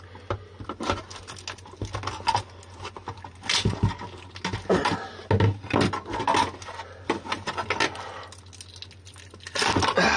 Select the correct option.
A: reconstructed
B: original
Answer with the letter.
B